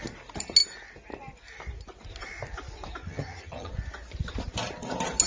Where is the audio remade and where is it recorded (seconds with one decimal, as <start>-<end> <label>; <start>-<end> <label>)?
0.0-3.0 recorded; 3.0-3.7 remade; 3.7-5.3 recorded